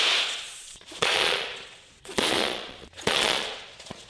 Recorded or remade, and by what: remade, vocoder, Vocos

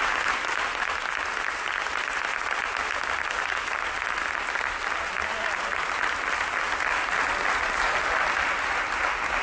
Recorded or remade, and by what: recorded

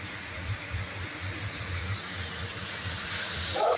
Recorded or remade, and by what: remade, vocoder, Vocos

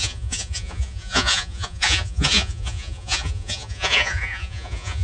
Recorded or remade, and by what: remade, vocoder, Vocos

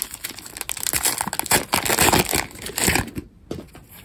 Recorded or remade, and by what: recorded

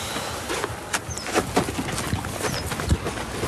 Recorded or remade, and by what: recorded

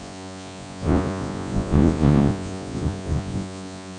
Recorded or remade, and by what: remade, vocoder, Vocos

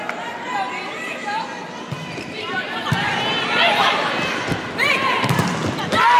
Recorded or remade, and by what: recorded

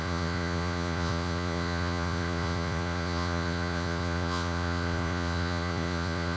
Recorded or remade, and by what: remade, vocoder, Vocos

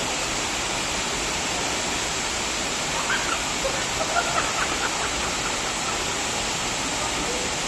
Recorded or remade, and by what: recorded